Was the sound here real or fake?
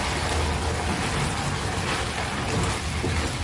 real